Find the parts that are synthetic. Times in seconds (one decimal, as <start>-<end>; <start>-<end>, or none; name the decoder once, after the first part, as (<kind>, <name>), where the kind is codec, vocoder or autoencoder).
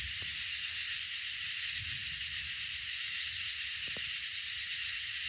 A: none